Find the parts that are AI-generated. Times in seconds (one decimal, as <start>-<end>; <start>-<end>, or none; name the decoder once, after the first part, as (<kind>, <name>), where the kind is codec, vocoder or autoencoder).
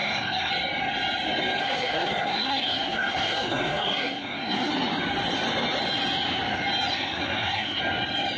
0.0-0.5 (codec, SNAC); 1.6-4.7; 6.9-7.8